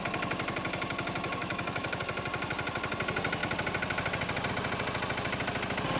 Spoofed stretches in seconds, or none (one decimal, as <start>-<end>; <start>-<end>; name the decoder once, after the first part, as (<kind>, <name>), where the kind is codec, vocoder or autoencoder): 1.4-2.0 (autoencoder, DAC-VAE)